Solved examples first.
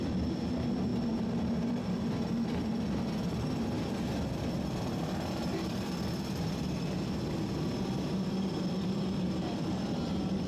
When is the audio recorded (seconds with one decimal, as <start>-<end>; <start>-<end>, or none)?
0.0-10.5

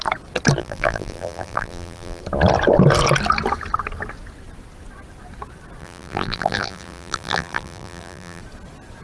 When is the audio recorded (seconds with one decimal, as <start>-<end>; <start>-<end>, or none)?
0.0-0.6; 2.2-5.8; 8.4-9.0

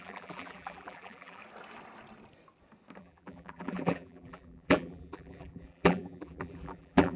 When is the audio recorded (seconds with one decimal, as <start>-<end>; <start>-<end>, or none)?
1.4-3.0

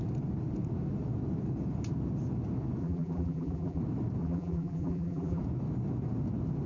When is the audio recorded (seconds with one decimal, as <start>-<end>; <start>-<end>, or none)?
0.0-2.8; 3.8-4.2; 5.4-6.7

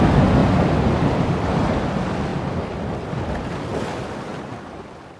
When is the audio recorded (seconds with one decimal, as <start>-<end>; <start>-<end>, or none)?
0.0-0.4; 1.0-2.3; 3.1-5.2

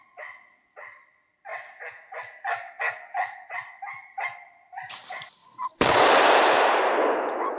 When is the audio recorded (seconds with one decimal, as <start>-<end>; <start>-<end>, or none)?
0.0-3.4; 5.0-5.4; 6.9-7.6

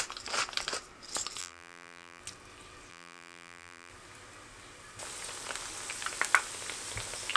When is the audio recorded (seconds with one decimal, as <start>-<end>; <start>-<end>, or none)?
0.0-1.4; 2.2-2.9; 3.9-7.4

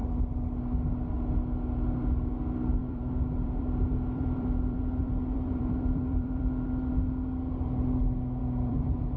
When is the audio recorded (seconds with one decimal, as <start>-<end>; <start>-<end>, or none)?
0.0-2.8; 6.9-8.4